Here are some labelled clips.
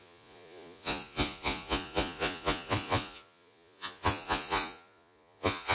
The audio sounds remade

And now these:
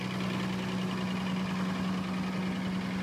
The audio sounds recorded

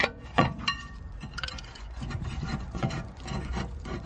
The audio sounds remade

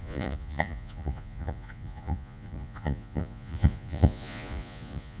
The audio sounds remade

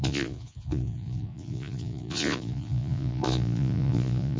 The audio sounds remade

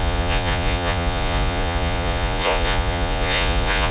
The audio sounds remade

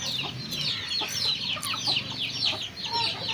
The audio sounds recorded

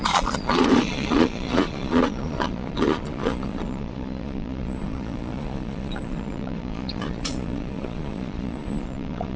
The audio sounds remade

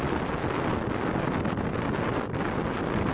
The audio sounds recorded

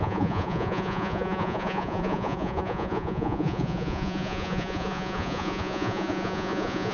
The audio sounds remade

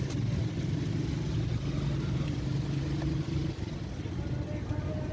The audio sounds recorded